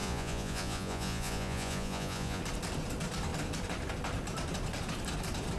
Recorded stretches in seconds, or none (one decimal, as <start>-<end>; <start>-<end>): 2.4-5.6